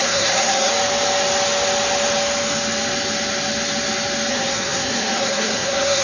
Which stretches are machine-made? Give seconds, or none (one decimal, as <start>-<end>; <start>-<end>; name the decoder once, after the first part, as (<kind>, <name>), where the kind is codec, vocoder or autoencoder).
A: 0.0-0.7 (codec, SNAC); 4.3-6.0